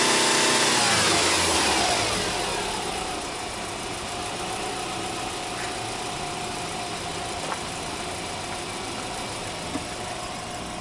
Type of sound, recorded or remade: recorded